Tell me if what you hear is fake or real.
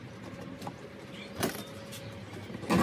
real